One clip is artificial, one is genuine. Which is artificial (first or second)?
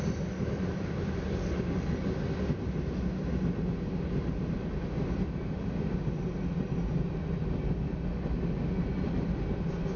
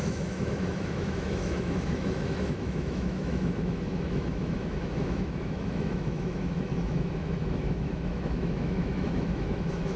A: second